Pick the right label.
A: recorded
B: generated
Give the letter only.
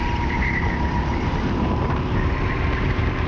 B